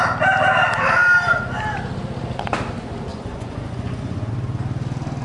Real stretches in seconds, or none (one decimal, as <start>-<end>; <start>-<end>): 0.0-3.1; 4.3-5.2